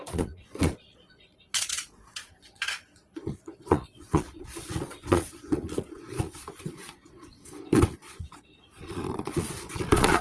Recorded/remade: remade